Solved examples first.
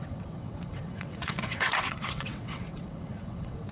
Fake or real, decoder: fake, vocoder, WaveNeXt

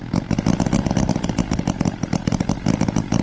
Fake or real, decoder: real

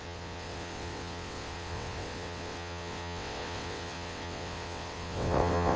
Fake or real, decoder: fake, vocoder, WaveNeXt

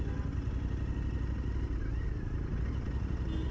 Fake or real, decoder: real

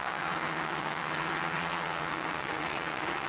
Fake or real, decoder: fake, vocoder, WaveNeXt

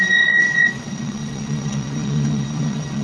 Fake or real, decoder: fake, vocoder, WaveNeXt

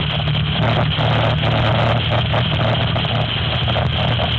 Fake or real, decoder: real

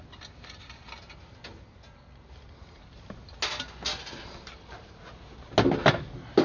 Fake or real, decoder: real